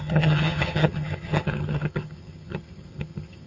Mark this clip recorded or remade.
remade